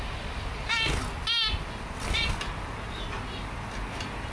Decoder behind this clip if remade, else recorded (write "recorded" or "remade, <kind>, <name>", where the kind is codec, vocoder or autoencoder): recorded